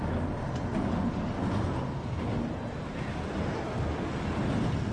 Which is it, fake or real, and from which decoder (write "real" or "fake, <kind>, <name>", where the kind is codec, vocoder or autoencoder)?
real